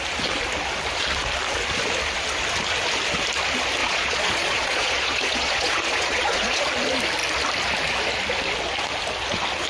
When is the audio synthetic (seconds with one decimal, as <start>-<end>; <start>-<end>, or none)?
3.8-6.6